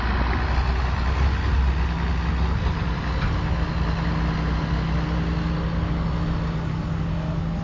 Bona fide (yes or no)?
yes